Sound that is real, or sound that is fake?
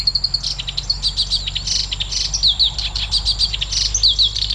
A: real